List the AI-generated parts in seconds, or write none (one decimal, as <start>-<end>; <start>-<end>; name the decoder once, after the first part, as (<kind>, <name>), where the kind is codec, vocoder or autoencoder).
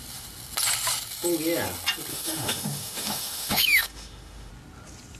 2.1-4.5 (autoencoder, DAC-VAE)